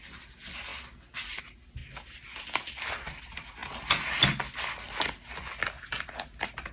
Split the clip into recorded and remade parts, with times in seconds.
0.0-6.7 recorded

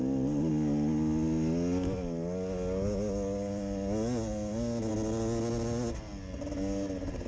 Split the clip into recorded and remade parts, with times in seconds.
0.0-7.3 recorded

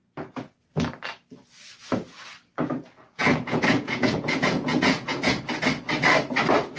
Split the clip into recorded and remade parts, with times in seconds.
0.0-3.2 recorded; 3.2-5.4 remade; 5.4-6.8 recorded

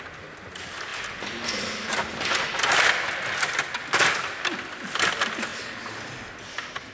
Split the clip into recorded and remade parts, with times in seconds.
0.0-6.9 recorded

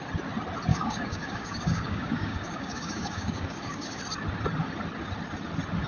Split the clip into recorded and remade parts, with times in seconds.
0.0-0.7 recorded; 0.7-4.0 remade; 4.0-5.9 recorded